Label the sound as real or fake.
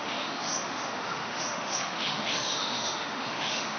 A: fake